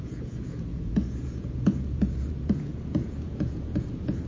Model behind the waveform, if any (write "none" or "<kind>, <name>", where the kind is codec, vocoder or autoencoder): vocoder, Vocos